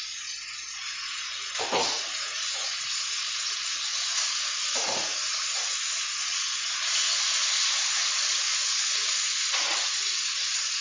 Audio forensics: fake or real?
fake